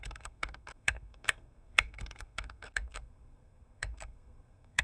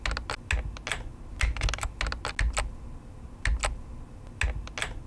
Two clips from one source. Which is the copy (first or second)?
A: first